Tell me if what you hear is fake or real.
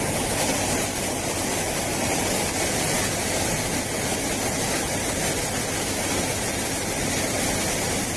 real